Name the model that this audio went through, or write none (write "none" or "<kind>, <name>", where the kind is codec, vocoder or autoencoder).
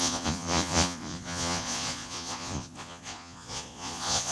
vocoder, Vocos